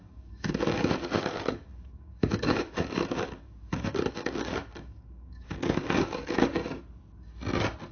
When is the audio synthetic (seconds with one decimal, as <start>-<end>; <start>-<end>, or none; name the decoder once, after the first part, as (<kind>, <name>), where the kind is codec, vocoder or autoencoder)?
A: 0.0-6.6 (codec, DAC)